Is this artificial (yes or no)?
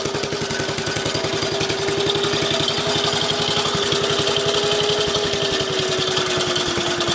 no